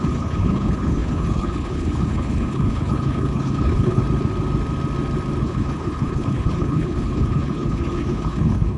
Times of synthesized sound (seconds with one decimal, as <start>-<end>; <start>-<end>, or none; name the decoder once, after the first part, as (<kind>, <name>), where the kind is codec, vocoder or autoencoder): 0.0-4.0 (codec, HILCodec); 5.4-8.8